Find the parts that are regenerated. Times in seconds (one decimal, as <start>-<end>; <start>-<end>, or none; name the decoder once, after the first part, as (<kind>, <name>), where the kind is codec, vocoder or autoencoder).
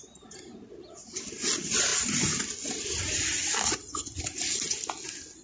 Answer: none